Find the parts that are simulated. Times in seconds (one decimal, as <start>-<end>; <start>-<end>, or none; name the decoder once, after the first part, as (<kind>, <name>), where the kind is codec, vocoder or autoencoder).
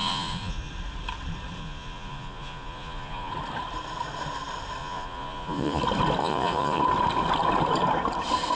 0.0-0.7 (vocoder, Vocos); 1.6-3.3; 4.8-5.8; 6.2-6.8